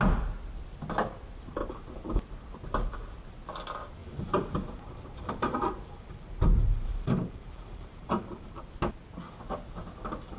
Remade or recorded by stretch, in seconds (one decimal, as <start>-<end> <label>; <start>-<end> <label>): 0.0-1.6 recorded; 1.6-2.2 remade; 2.2-4.0 recorded; 4.0-8.7 remade; 8.7-10.4 recorded